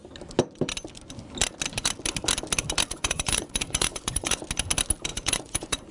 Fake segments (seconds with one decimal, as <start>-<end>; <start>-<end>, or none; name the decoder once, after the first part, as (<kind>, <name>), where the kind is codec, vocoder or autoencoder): 2.9-4.4 (vocoder, Vocos); 5.1-5.9